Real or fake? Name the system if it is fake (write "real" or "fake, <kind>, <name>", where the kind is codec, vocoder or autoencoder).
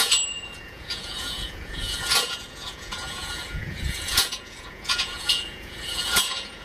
fake, vocoder, Vocos